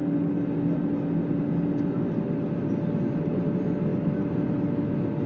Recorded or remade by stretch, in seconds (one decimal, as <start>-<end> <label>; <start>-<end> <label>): 0.0-5.3 recorded